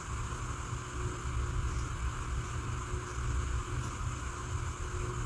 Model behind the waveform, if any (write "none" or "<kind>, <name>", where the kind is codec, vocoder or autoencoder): none